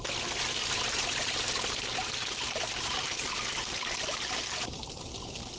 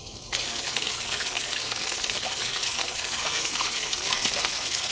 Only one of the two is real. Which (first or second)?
first